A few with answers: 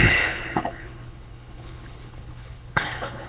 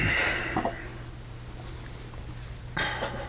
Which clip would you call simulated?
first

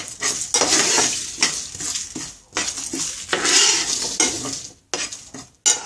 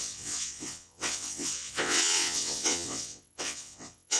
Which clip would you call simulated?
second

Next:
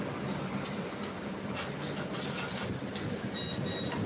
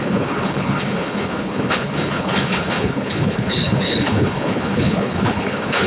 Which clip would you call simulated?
second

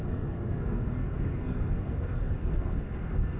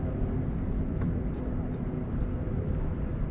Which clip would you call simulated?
first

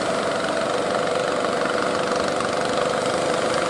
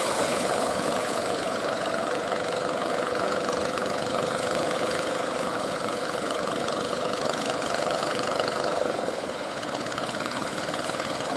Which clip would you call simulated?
second